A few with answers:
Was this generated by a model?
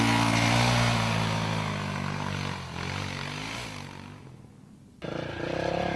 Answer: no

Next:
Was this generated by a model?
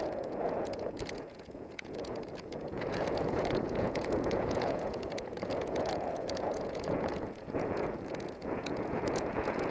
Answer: yes